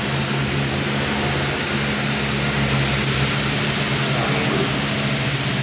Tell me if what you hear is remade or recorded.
recorded